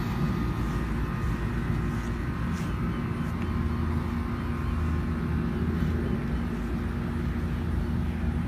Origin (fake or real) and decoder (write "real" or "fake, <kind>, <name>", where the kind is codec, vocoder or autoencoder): real